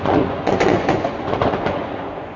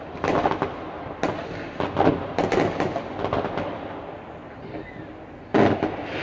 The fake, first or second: first